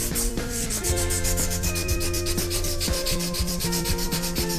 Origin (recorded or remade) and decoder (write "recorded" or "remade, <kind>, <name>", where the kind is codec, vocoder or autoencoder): remade, vocoder, BigVGAN v2